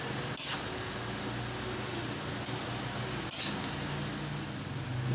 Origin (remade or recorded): recorded